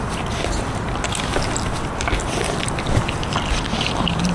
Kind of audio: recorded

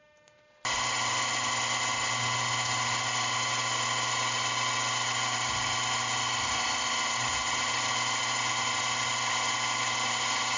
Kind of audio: recorded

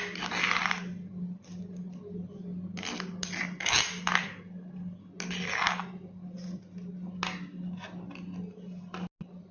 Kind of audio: recorded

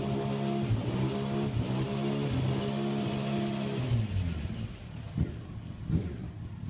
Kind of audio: recorded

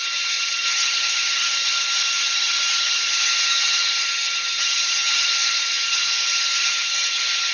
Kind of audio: remade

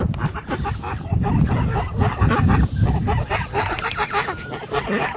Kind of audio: recorded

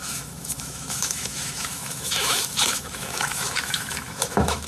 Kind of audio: remade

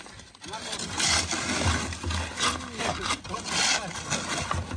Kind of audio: recorded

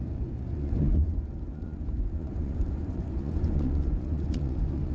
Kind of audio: remade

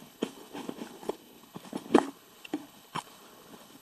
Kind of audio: remade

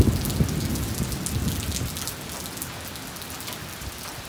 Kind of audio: recorded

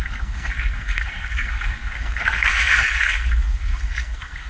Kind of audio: remade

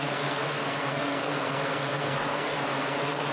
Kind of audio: remade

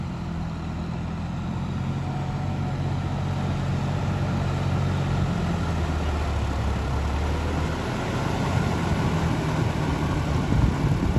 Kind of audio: recorded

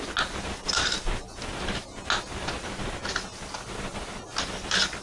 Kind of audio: recorded